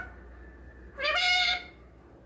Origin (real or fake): real